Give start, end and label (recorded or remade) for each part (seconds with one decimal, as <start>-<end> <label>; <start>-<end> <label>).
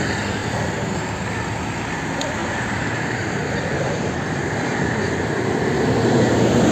0.0-0.4 recorded; 0.4-0.9 remade; 0.9-2.4 recorded; 2.4-4.9 remade; 4.9-6.7 recorded